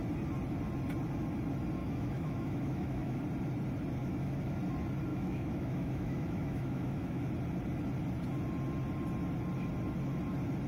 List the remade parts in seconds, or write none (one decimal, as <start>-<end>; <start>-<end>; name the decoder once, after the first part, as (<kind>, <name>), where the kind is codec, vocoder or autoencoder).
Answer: 1.8-3.2 (autoencoder, DAC-VAE); 4.0-4.6; 5.1-7.3